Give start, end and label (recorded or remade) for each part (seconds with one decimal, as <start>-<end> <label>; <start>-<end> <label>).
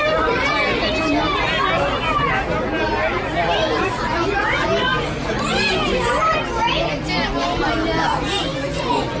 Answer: 0.0-9.2 recorded